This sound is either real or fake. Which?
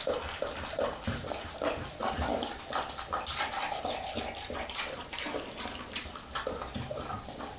real